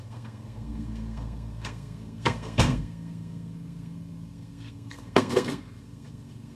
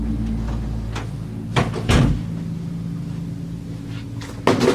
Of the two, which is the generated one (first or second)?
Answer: first